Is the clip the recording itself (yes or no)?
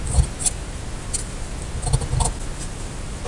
yes